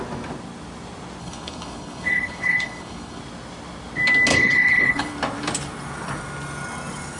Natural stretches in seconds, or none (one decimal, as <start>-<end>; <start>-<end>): 0.0-1.2; 3.2-4.3; 5.1-7.2